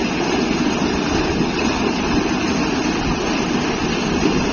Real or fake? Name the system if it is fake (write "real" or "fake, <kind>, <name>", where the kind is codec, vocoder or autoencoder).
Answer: fake, vocoder, BigVGAN v2